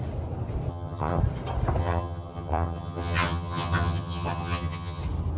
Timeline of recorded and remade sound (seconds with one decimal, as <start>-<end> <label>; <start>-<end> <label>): 0.0-0.7 recorded; 0.7-1.2 remade; 1.2-1.8 recorded; 1.8-5.0 remade; 5.0-5.4 recorded